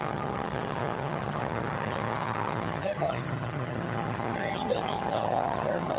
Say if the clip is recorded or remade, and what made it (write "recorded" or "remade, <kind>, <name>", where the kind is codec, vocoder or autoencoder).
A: remade, vocoder, HiFi-GAN